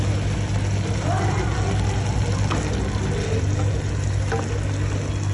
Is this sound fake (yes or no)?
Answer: no